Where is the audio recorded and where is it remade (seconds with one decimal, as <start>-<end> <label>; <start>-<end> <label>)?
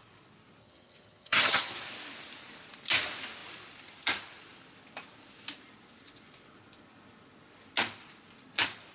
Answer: 0.0-0.6 recorded; 0.6-1.7 remade; 1.7-8.9 recorded